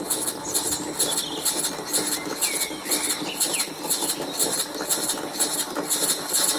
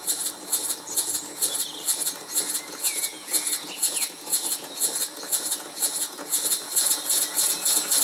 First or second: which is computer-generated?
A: second